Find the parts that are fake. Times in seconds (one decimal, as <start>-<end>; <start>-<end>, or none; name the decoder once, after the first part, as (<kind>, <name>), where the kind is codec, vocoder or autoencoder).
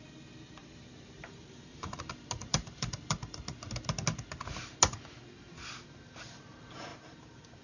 0.6-2.1 (vocoder, BigVGAN v2); 2.5-3.4; 6.9-7.6